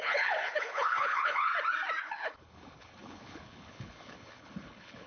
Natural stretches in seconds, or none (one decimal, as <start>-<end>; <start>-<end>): 1.5-2.0